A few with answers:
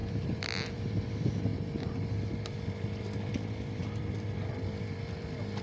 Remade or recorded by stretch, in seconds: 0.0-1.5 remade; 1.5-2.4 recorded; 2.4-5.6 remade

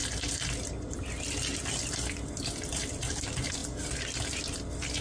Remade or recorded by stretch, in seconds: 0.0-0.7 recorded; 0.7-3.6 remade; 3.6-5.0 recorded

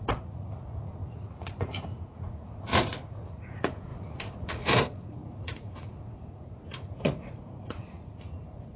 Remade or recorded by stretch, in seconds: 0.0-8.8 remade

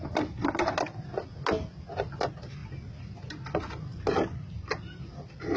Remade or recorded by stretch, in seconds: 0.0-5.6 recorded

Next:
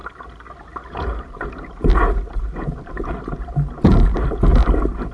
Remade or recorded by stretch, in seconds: 0.0-5.1 recorded